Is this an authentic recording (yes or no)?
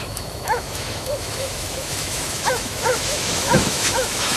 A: no